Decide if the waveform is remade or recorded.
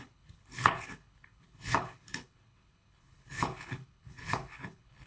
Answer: remade